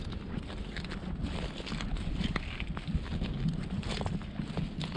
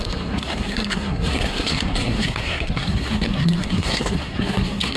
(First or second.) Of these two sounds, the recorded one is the first